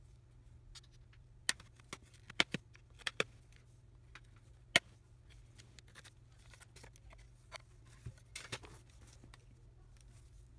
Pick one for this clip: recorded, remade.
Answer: recorded